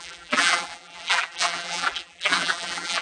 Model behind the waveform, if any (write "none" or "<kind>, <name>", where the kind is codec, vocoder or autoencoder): vocoder, BigVGAN v2